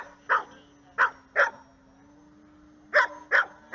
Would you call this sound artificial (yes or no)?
no